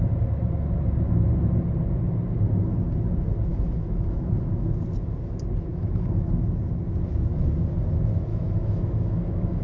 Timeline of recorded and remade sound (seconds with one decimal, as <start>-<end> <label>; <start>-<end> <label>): 0.0-3.5 recorded; 3.5-4.3 remade; 4.3-5.7 recorded; 5.7-6.3 remade; 6.3-8.3 recorded; 8.3-9.6 remade